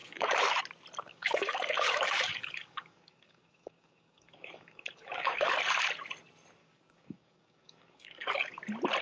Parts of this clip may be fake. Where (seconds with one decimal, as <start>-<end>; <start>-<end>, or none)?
0.0-0.6; 1.1-5.6; 6.6-8.6